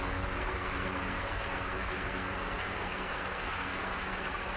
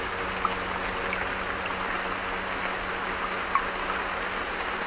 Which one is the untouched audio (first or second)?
second